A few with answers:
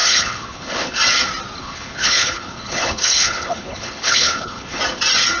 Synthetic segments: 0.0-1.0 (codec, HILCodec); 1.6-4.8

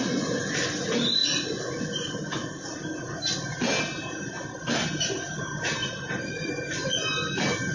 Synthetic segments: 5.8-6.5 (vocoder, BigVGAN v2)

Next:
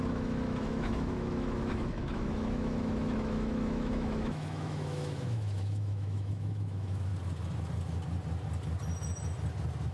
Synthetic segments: 0.0-7.1 (autoencoder, DAC-VAE)